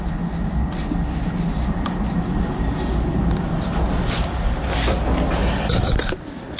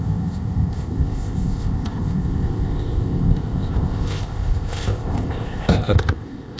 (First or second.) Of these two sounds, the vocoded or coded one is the second